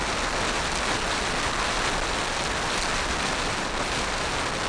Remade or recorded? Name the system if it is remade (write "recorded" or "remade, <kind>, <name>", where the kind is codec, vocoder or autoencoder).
recorded